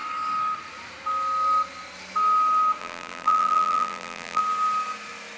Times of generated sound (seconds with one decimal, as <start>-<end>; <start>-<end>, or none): 2.8-4.4